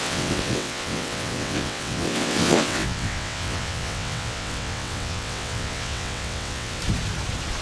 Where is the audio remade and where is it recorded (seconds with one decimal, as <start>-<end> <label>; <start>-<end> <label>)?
0.0-6.8 remade; 6.8-7.6 recorded

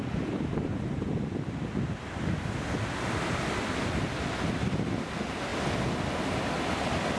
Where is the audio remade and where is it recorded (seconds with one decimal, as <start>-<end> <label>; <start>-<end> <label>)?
0.0-7.2 recorded

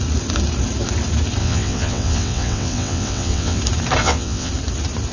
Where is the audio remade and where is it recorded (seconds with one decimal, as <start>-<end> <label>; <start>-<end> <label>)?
0.0-1.4 recorded; 1.4-3.6 remade; 3.6-4.0 recorded; 4.0-4.5 remade; 4.5-5.1 recorded

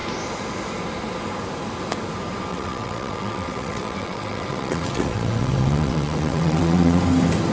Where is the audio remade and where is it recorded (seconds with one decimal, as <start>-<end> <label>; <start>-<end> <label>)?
0.0-2.5 recorded; 2.5-7.0 remade; 7.0-7.5 recorded

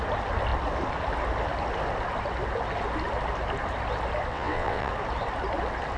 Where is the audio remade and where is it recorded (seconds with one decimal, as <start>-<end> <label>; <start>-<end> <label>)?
0.0-4.3 recorded; 4.3-4.9 remade; 4.9-6.0 recorded

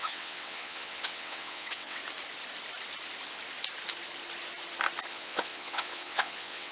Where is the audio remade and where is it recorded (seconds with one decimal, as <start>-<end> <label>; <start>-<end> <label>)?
0.0-2.0 remade; 2.0-5.1 recorded; 5.1-6.7 remade

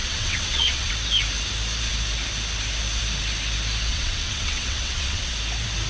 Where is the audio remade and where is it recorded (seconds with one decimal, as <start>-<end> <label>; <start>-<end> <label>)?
0.0-0.9 remade; 0.9-3.9 recorded; 3.9-5.3 remade; 5.3-5.9 recorded

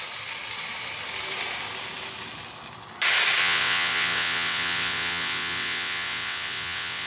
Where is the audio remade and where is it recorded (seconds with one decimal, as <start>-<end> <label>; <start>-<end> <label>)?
0.0-3.4 recorded; 3.4-7.1 remade